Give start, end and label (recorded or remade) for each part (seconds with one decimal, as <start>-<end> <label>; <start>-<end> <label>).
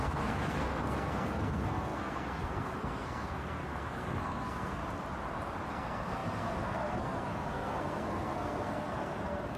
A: 0.0-4.8 remade; 4.8-5.7 recorded; 5.7-9.6 remade